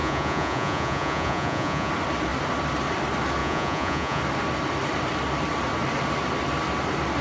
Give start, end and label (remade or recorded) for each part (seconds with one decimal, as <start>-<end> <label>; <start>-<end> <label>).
0.0-1.9 remade; 1.9-3.4 recorded; 3.4-4.2 remade; 4.2-7.2 recorded